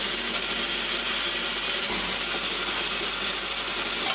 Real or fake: real